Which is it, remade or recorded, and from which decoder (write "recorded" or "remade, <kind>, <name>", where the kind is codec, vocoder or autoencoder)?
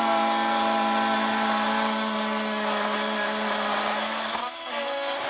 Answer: recorded